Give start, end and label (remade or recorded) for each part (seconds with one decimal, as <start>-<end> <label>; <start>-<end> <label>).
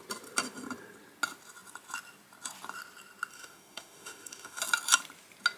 0.0-3.3 recorded; 3.3-4.6 remade; 4.6-5.6 recorded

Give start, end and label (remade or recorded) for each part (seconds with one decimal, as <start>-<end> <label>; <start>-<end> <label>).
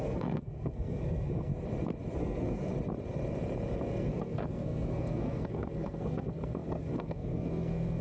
0.0-1.5 remade; 1.5-2.2 recorded; 2.2-2.7 remade; 2.7-3.8 recorded; 3.8-8.0 remade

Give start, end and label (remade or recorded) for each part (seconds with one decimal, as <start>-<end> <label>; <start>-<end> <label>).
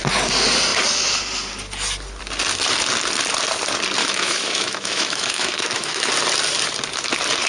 0.0-4.0 recorded; 4.0-6.1 remade; 6.1-7.5 recorded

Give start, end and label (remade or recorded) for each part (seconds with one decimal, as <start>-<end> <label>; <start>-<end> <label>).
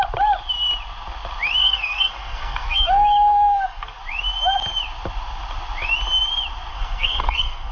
0.0-1.6 recorded; 1.6-4.0 remade; 4.0-6.7 recorded; 6.7-7.7 remade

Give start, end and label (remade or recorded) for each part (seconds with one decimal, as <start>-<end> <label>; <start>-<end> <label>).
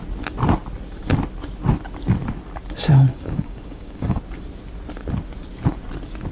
0.0-3.1 recorded; 3.1-4.2 remade; 4.2-6.3 recorded